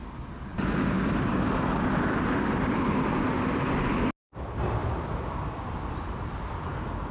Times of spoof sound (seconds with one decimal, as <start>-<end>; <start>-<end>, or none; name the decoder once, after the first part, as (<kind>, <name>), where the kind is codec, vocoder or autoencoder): 0.5-2.9 (vocoder, BigVGAN v2); 4.8-6.3